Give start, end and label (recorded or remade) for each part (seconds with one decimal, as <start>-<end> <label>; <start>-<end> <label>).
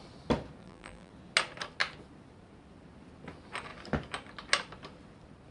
0.0-0.6 recorded; 0.6-1.1 remade; 1.1-5.5 recorded